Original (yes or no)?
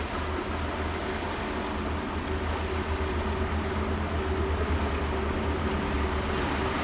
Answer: yes